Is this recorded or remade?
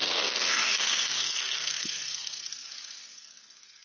remade